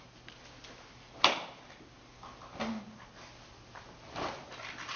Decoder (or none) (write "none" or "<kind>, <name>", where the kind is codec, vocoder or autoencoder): none